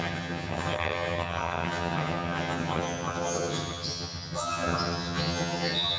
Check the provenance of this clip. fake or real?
fake